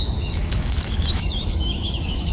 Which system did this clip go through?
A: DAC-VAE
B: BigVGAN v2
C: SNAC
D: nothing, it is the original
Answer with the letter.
A